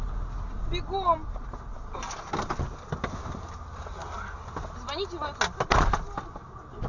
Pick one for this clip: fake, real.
real